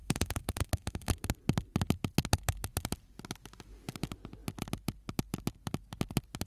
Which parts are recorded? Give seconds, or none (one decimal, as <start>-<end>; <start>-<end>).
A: 1.1-6.5